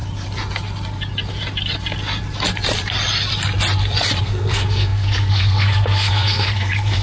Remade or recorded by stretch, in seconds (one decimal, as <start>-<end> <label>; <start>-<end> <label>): 0.0-4.2 recorded; 4.2-7.0 remade